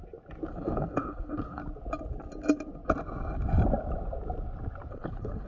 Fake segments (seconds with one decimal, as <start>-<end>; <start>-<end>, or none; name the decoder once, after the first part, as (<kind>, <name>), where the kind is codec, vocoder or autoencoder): 0.5-1.6 (codec, HILCodec); 4.9-5.5